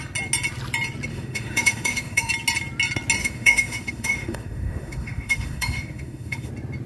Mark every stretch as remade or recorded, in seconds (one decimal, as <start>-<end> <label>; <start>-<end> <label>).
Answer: 0.0-1.1 recorded; 1.1-2.3 remade; 2.3-3.2 recorded; 3.2-6.5 remade; 6.5-6.9 recorded